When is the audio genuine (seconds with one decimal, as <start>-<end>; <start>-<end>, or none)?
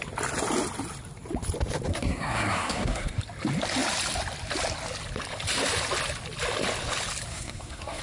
0.0-1.9; 3.2-7.3